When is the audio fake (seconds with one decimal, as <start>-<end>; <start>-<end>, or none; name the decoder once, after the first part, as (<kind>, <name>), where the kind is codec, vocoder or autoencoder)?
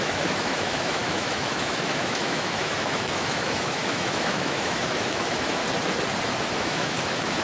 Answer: 0.0-5.6 (autoencoder, DAC-VAE); 6.6-7.4